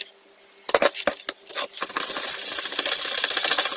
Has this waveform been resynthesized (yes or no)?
no